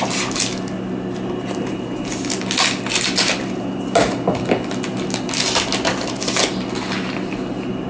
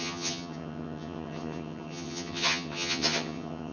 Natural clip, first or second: first